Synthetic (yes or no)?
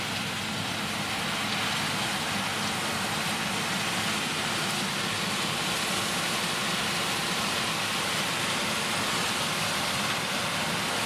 no